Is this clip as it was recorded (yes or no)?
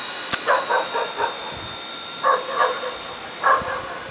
no